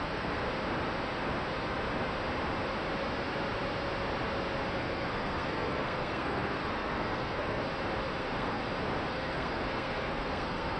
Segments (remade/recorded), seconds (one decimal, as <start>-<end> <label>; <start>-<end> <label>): 0.0-0.4 remade; 0.4-4.7 recorded; 4.7-7.6 remade; 7.6-8.2 recorded; 8.2-8.6 remade; 8.6-9.1 recorded; 9.1-10.8 remade